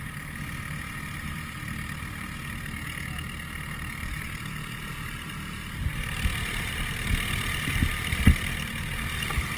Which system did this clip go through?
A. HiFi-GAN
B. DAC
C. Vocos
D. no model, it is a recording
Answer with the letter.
D